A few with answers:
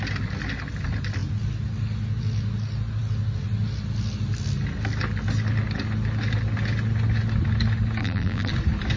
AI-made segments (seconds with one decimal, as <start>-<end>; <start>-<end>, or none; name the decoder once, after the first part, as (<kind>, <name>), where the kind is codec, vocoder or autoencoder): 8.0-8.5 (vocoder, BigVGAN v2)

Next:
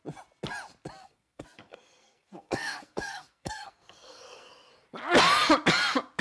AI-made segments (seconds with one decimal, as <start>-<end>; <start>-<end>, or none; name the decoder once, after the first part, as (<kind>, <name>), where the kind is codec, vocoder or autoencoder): 1.0-4.7 (codec, SNAC)

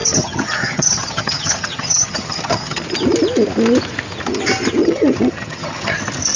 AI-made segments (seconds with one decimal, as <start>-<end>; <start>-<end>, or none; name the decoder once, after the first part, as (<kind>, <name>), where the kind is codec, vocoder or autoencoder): 0.0-2.8 (vocoder, HiFi-GAN); 4.8-6.0

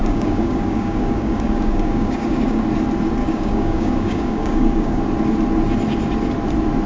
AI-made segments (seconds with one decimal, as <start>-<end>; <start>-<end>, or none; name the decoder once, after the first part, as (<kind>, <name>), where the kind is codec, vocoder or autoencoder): 0.0-2.6 (codec, DAC); 3.2-5.0

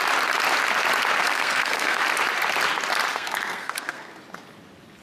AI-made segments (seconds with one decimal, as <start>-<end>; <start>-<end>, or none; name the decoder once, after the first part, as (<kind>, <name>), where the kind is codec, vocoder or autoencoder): 1.2-2.0 (codec, SNAC); 3.1-4.1

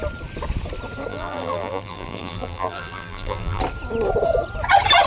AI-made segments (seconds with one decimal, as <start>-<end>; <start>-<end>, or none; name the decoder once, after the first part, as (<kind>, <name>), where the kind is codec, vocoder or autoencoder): 1.1-3.6 (vocoder, BigVGAN v2)

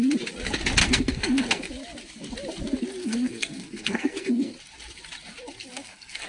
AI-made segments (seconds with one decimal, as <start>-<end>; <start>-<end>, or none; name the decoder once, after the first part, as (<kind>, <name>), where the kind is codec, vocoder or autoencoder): 0.8-1.7 (codec, SNAC); 3.0-4.5; 5.7-6.3

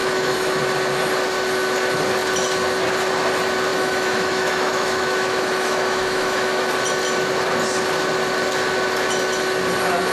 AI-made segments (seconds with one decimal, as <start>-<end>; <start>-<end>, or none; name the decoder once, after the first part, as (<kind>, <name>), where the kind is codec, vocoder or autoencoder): 0.0-0.6 (autoencoder, DAC-VAE); 3.7-6.7